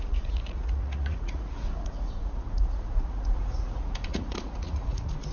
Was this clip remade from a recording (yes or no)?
yes